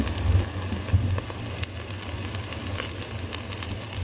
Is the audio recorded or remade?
recorded